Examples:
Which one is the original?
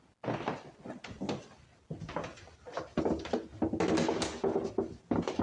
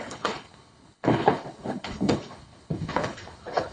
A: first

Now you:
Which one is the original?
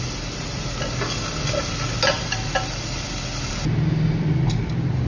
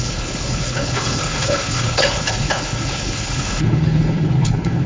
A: first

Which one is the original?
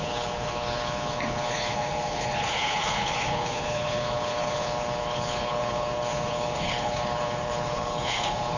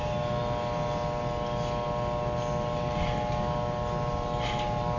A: second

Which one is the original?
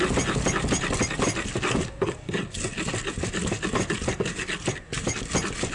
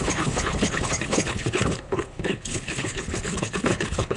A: first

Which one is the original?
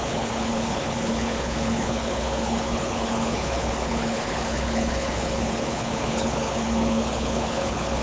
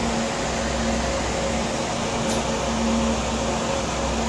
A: second